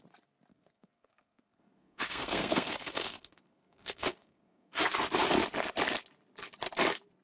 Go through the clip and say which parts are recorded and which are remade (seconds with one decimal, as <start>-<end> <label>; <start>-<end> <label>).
0.0-0.5 recorded; 0.5-4.8 remade; 4.8-7.2 recorded